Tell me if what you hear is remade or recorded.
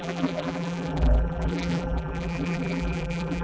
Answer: remade